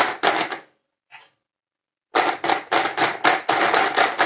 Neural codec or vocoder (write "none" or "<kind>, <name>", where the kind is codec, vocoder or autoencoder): none